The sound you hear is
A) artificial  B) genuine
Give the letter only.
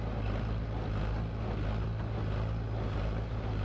B